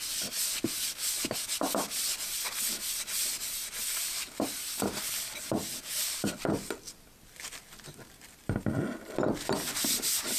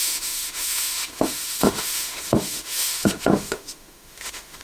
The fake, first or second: second